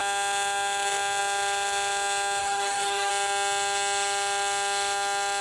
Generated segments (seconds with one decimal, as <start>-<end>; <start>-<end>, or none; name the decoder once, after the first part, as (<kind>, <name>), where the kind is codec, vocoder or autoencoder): 2.4-3.1 (codec, DAC)